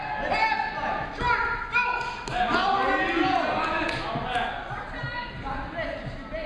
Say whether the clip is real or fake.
real